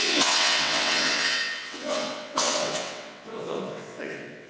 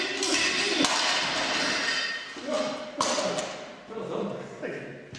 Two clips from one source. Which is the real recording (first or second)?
second